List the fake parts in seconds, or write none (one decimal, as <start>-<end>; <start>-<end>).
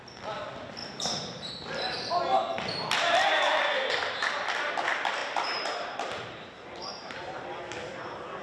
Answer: 0.8-1.5; 3.2-3.9; 5.2-7.6